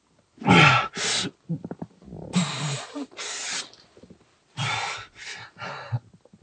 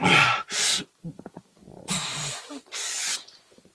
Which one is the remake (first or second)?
second